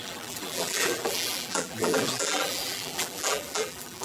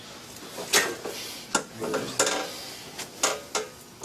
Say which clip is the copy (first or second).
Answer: first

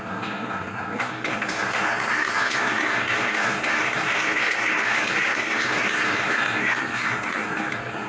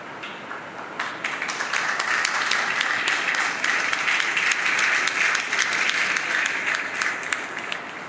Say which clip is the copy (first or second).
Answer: first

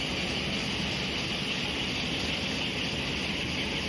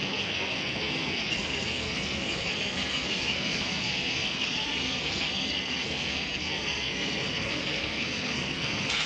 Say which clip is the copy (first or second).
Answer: second